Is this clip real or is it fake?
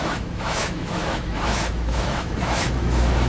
fake